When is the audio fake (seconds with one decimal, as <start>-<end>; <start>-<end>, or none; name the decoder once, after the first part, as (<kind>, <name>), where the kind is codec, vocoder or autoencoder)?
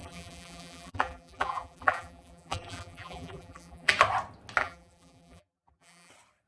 0.0-3.9 (vocoder, BigVGAN v2); 4.6-6.1